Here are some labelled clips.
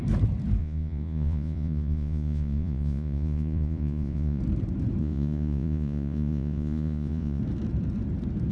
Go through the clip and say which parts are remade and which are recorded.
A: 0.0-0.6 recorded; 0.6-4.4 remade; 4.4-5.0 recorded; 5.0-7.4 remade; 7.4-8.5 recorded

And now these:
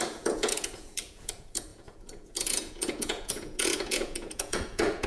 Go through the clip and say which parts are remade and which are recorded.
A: 0.0-5.1 remade